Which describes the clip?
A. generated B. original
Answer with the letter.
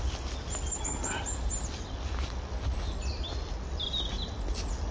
B